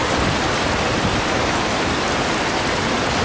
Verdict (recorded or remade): recorded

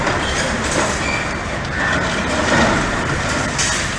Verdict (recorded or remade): recorded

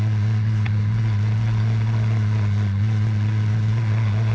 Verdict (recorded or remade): remade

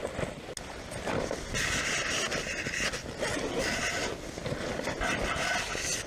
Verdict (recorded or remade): recorded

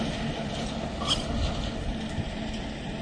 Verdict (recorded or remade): recorded